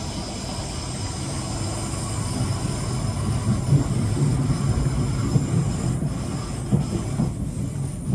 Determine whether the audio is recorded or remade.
recorded